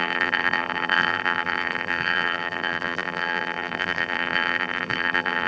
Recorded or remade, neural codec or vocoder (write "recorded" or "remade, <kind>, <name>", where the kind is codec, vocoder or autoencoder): remade, vocoder, BigVGAN v2